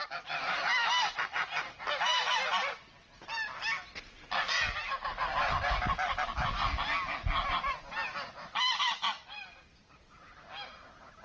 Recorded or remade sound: recorded